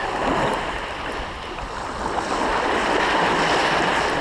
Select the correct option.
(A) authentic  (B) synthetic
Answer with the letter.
A